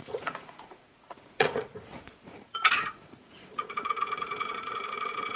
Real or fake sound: fake